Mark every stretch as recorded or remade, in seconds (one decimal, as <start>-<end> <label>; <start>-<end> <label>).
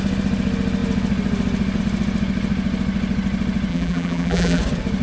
0.0-3.7 recorded; 3.7-4.6 remade; 4.6-5.0 recorded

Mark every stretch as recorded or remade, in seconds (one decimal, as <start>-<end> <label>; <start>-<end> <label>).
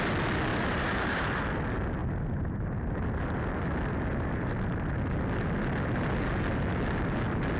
0.0-0.5 recorded; 0.5-1.4 remade; 1.4-7.6 recorded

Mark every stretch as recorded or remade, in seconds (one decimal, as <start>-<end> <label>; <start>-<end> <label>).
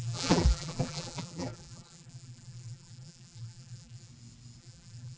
0.0-4.1 remade; 4.1-4.6 recorded; 4.6-5.2 remade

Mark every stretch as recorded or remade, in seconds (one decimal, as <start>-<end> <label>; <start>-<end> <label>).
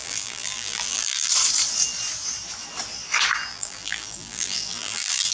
0.0-1.3 remade; 1.3-3.5 recorded; 3.5-5.3 remade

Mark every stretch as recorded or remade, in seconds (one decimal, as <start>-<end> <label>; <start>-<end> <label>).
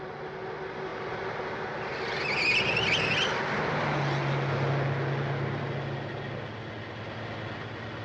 0.0-8.0 recorded